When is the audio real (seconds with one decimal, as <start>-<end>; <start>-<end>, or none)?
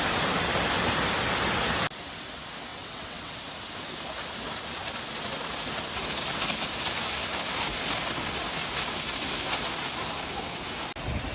0.0-2.7; 3.4-11.3